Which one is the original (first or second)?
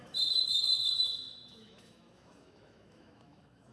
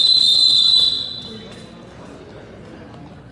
second